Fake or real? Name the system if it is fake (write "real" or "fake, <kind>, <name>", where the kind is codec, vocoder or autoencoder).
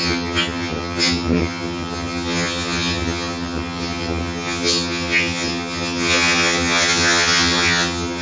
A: fake, vocoder, HiFi-GAN